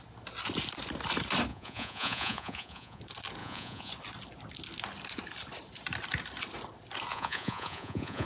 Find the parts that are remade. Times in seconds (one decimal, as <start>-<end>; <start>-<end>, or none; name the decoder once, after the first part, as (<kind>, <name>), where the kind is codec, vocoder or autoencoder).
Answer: 1.5-3.0 (vocoder, Vocos); 3.4-3.9; 7.1-8.3